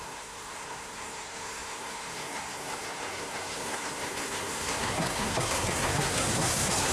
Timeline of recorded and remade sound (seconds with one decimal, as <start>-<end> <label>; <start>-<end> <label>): 0.0-6.9 remade